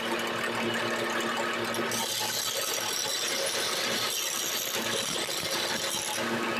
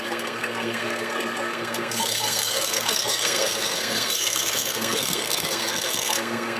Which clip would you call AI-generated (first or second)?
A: second